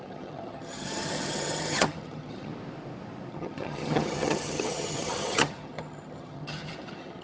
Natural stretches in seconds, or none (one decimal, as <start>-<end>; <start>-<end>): 2.5-3.3